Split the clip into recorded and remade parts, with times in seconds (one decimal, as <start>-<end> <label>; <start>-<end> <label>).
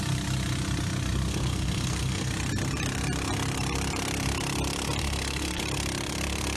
0.0-1.3 recorded; 1.3-2.3 remade; 2.3-5.0 recorded; 5.0-5.6 remade; 5.6-6.6 recorded